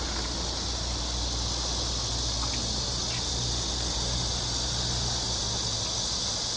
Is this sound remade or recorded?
recorded